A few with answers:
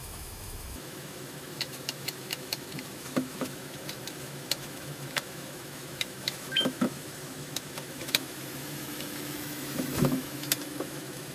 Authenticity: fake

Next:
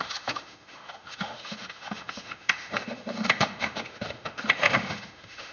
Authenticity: fake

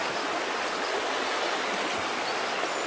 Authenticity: real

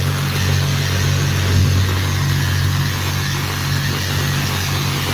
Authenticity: real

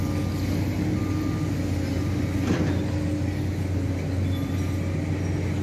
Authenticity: real